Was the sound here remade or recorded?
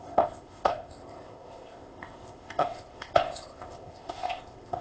remade